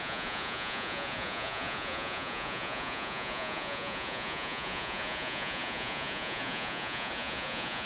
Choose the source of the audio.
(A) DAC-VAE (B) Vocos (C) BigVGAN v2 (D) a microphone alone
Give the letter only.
B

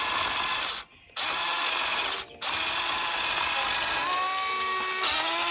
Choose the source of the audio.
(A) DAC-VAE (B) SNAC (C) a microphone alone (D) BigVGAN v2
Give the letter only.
C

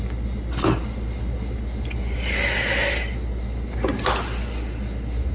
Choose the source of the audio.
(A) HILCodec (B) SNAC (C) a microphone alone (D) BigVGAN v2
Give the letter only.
C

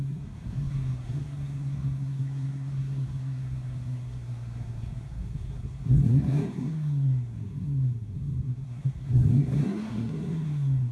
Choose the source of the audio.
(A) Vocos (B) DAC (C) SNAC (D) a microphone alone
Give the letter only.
C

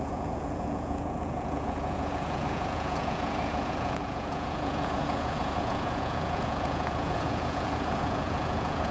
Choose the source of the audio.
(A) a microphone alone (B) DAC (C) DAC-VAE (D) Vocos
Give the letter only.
D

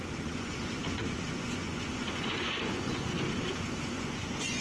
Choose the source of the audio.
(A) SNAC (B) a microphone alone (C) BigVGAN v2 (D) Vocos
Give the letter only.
D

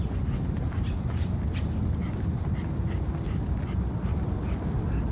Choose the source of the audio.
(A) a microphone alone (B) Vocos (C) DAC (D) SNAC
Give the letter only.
A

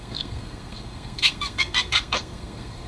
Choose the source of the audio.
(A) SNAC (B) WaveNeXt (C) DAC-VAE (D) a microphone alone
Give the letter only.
A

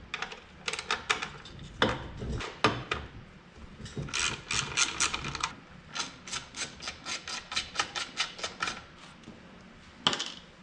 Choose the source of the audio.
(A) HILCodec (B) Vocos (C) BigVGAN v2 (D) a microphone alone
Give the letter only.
D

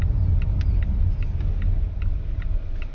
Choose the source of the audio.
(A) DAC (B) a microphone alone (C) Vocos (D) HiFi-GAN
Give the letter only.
B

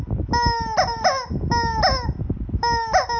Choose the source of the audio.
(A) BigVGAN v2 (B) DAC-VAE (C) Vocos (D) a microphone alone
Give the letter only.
D